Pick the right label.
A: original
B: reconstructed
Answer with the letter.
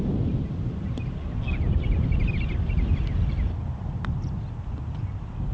A